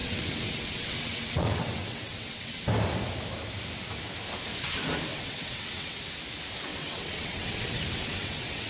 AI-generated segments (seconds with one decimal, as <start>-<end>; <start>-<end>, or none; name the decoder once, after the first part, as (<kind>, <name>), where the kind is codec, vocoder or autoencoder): 0.0-2.7 (vocoder, WaveNeXt); 5.1-6.0; 6.7-8.7